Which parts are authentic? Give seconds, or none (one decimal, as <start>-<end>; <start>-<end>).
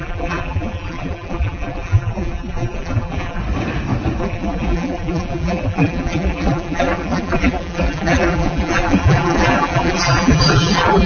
3.4-4.2